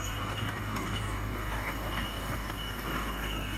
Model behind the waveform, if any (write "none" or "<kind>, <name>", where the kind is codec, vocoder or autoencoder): codec, DAC